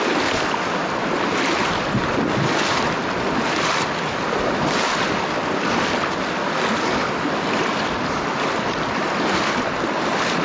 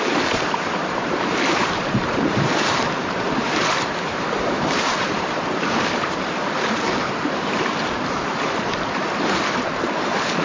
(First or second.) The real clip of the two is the first